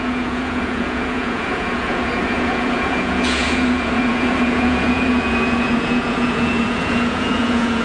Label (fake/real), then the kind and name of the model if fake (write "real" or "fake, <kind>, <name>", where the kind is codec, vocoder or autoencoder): fake, vocoder, Vocos